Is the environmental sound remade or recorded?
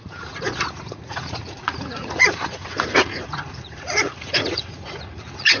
remade